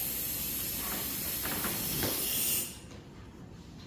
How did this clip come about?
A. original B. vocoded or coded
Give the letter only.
A